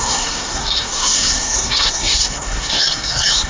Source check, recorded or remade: remade